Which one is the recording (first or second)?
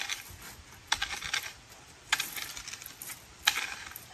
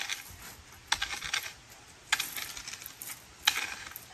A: second